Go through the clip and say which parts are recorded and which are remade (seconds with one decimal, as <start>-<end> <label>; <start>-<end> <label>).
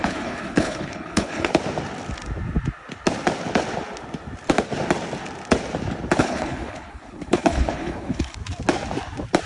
0.0-1.5 remade; 1.5-6.2 recorded; 6.2-8.4 remade; 8.4-9.5 recorded